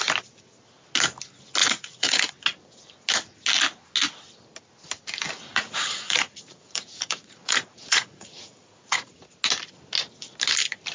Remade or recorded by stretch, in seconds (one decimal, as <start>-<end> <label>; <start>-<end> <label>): 0.0-1.6 recorded; 1.6-2.3 remade; 2.3-5.5 recorded; 5.5-9.2 remade; 9.2-10.9 recorded